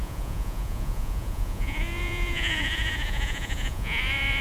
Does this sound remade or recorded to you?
remade